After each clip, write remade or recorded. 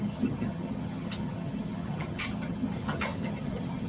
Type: remade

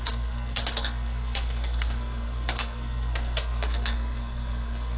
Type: remade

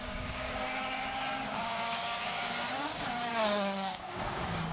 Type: remade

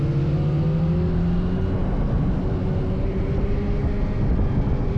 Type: recorded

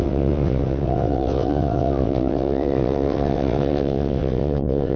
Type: remade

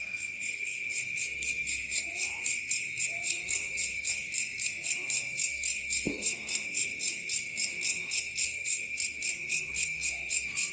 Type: remade